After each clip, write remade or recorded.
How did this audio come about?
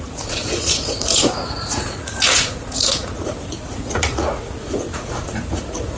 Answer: remade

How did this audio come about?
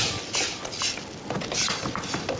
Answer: recorded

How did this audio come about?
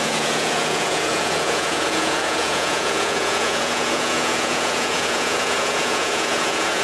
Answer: remade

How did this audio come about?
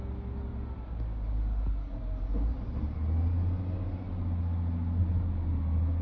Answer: recorded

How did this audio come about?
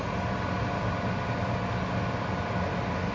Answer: recorded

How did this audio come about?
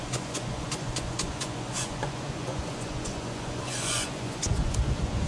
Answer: remade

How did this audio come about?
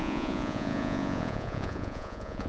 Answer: remade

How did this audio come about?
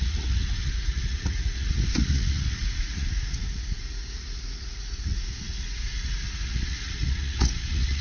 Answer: remade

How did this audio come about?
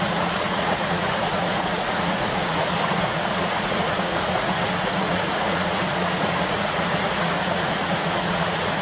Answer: remade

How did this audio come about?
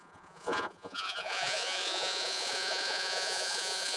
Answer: remade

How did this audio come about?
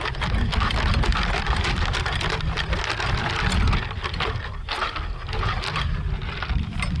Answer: recorded